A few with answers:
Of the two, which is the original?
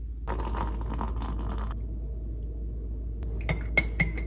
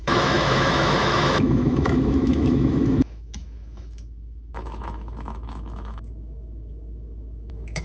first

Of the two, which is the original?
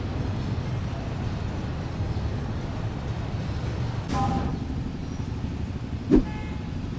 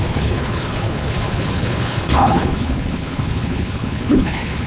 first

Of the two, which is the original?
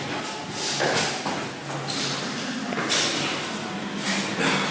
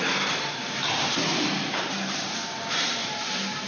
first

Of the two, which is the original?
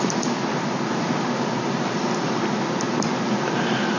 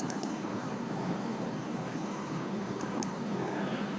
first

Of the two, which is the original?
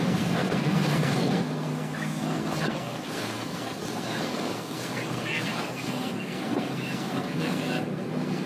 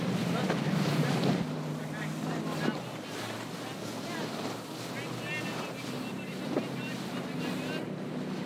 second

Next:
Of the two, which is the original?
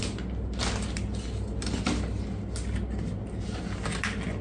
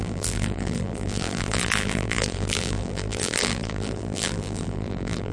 first